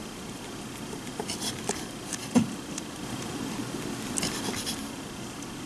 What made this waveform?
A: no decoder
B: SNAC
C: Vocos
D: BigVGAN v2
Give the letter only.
A